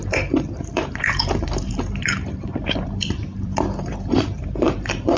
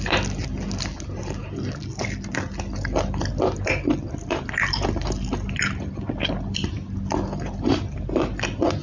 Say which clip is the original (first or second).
second